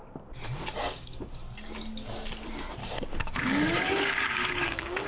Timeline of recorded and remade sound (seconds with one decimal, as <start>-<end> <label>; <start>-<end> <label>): 0.0-0.8 recorded; 0.8-1.3 remade; 1.3-2.8 recorded; 2.8-5.1 remade